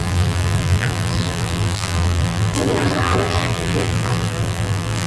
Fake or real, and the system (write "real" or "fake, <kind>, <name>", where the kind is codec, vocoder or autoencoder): fake, vocoder, BigVGAN v2